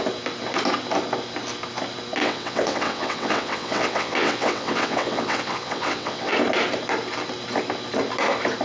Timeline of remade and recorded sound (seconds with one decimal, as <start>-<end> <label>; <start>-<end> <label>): 0.0-2.2 recorded; 2.2-6.3 remade; 6.3-8.6 recorded